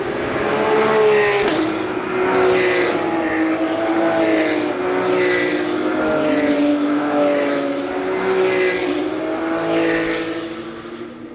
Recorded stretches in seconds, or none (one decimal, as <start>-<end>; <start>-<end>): 0.0-6.7; 7.9-11.3